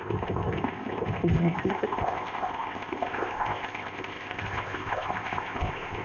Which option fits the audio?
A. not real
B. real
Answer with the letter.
A